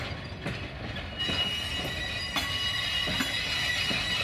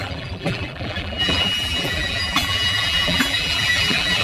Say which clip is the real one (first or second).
first